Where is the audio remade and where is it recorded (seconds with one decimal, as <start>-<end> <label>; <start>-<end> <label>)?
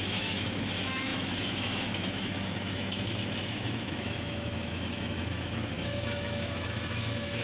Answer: 0.0-7.4 remade